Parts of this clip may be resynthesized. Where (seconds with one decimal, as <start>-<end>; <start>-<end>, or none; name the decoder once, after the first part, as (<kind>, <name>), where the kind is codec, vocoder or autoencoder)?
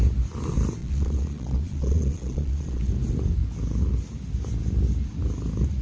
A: 0.8-2.9 (vocoder, Vocos)